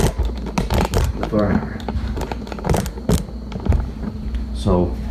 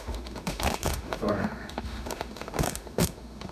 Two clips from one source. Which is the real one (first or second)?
first